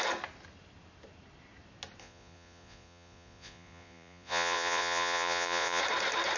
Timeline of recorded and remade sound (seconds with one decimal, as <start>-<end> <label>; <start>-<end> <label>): 0.0-2.0 recorded; 2.0-5.8 remade; 5.8-6.4 recorded